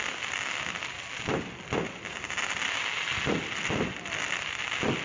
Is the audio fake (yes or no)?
no